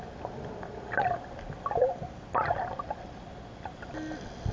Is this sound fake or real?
real